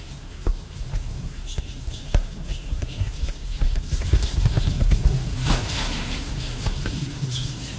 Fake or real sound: fake